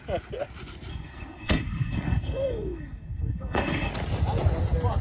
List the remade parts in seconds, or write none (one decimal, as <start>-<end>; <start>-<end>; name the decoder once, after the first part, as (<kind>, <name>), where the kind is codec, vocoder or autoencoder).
0.9-3.9 (codec, SNAC)